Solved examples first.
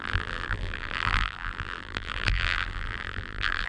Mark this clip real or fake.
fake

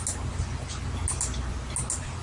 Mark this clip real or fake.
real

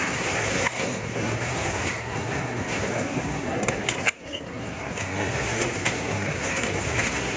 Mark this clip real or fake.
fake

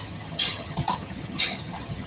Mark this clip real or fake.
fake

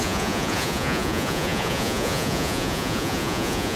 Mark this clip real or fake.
fake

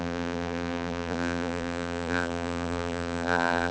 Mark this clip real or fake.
fake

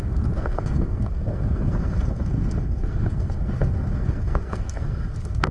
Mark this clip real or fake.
fake